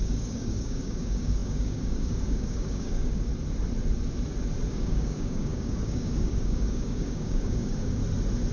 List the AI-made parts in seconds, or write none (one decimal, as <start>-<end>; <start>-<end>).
0.0-3.3; 4.7-8.0